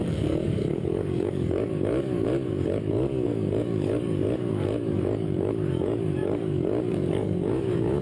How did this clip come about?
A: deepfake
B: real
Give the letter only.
A